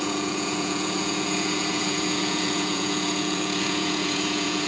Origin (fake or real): fake